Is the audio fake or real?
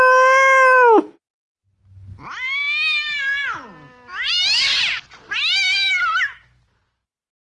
real